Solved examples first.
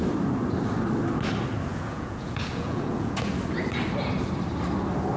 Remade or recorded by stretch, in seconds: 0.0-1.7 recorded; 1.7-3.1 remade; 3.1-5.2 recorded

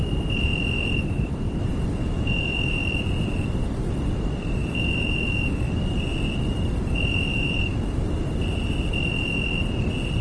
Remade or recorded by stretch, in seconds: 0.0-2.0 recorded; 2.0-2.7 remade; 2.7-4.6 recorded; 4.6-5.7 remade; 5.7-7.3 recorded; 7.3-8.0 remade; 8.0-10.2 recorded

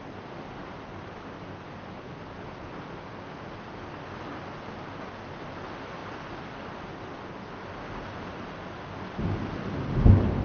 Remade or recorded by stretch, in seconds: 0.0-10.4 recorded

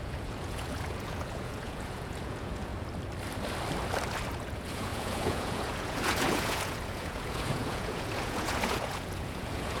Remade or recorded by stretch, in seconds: 0.0-2.7 remade; 2.7-4.3 recorded; 4.3-9.8 remade

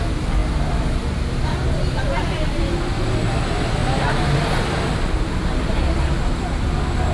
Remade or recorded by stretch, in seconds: 0.0-7.1 recorded

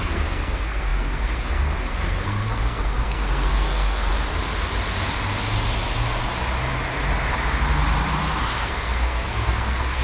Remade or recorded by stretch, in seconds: 0.0-4.1 remade; 4.1-8.4 recorded; 8.4-10.0 remade